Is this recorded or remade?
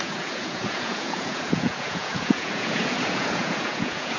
remade